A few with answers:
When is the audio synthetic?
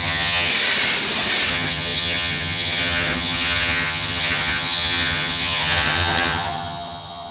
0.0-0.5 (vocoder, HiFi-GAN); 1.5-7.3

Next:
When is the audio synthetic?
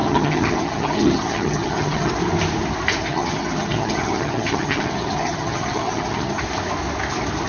0.0-2.1 (vocoder, HiFi-GAN); 3.1-6.4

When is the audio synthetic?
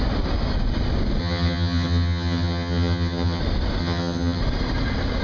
1.2-3.4 (vocoder, HiFi-GAN); 3.8-4.4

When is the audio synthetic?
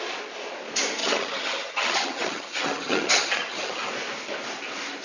1.0-3.9 (vocoder, HiFi-GAN)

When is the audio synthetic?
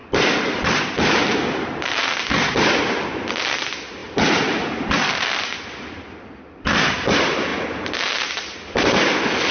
none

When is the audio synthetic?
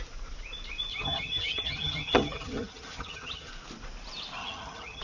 0.9-3.5 (vocoder, HiFi-GAN); 4.4-5.0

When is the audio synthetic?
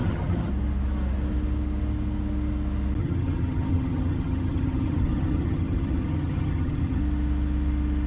0.0-0.5 (vocoder, HiFi-GAN); 3.0-7.0